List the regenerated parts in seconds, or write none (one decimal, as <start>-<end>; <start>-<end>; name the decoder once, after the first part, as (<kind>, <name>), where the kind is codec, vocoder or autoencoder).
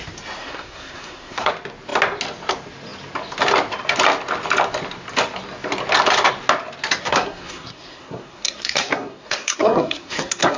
0.4-1.5 (codec, SNAC); 7.0-10.6